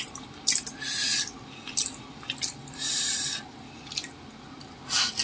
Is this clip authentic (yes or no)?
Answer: yes